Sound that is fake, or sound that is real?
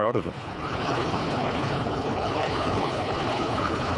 fake